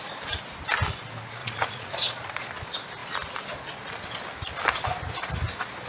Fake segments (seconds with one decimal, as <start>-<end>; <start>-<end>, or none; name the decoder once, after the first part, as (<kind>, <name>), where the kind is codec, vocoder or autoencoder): 1.4-2.5 (vocoder, Vocos)